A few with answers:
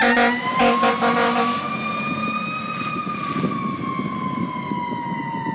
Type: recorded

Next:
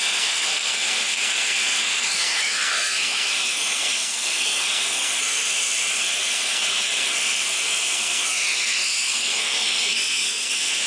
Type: remade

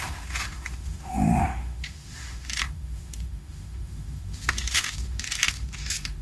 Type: remade